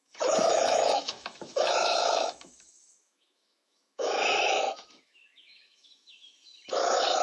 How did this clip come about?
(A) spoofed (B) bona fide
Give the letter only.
A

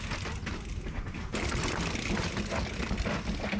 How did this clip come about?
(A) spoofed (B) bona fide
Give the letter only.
B